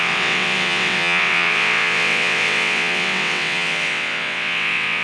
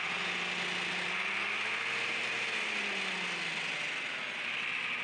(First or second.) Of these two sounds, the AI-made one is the first